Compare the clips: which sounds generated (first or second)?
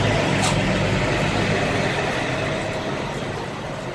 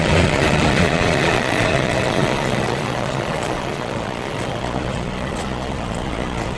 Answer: second